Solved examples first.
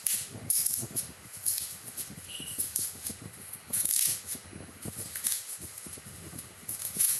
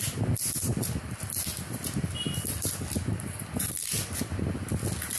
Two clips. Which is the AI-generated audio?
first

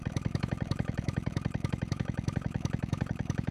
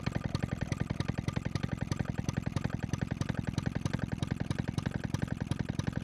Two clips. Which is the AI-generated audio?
first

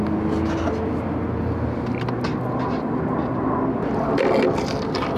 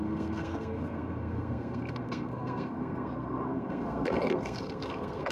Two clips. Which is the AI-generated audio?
second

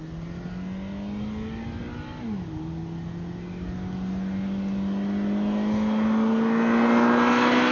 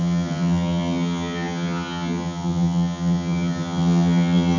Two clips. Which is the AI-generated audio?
second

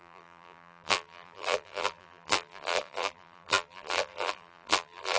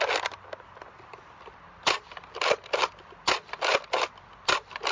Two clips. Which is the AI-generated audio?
first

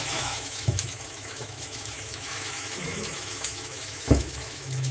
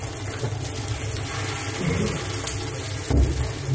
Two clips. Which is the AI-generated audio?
first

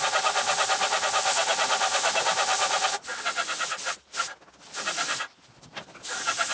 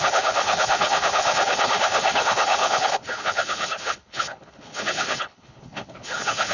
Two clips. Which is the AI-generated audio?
second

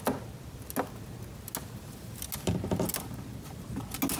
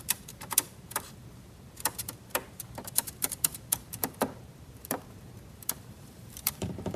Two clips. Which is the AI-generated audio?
second